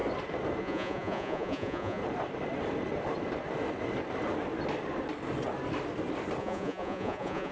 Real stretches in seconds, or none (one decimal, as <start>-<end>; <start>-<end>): 0.0-0.6; 2.0-6.4